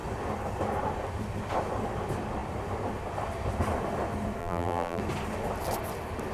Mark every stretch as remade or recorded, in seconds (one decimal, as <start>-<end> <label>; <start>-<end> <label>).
0.0-4.4 recorded; 4.4-5.0 remade; 5.0-6.3 recorded